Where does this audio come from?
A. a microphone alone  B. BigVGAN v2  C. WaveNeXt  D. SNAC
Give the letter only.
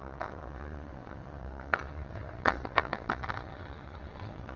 C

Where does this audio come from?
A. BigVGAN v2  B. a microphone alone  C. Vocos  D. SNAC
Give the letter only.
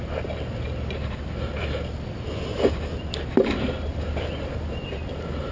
B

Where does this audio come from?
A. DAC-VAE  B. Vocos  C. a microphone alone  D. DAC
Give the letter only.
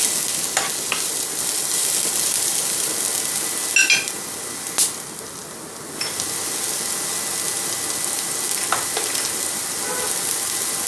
C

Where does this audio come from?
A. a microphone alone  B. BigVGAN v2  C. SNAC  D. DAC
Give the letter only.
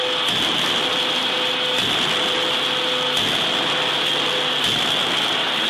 A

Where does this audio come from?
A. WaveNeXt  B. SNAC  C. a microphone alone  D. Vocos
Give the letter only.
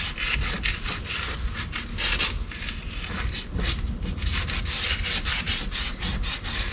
C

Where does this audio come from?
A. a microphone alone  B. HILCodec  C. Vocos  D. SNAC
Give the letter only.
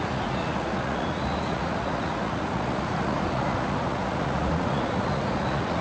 C